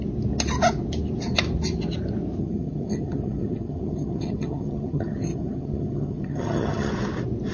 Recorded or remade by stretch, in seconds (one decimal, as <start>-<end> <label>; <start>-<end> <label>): 0.0-2.4 recorded; 2.4-6.9 remade; 6.9-7.5 recorded